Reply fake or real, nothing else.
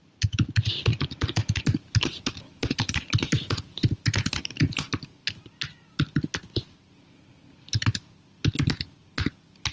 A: real